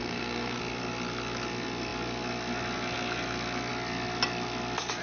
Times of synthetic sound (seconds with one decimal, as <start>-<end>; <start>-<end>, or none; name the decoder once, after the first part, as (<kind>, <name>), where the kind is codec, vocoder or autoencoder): 0.0-0.6 (codec, SNAC)